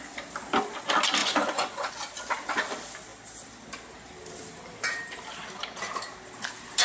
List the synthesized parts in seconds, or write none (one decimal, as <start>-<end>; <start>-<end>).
1.2-1.9